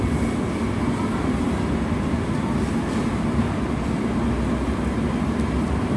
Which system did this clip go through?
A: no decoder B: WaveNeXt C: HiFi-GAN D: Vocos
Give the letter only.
A